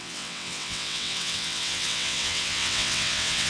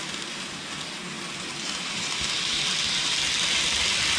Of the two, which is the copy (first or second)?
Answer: first